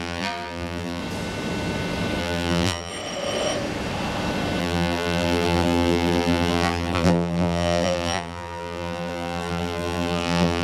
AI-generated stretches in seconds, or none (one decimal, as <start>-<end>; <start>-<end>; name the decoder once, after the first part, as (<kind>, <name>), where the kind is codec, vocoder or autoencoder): 0.0-1.0 (vocoder, BigVGAN v2); 2.2-2.9; 4.6-10.6